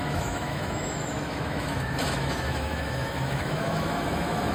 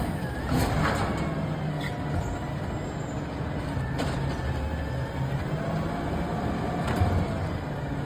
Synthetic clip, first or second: first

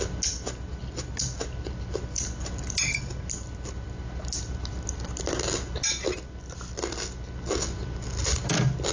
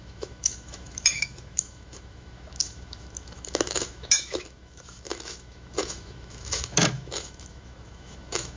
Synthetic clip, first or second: second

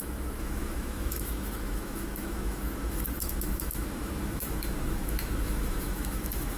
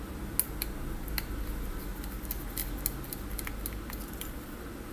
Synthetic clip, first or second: first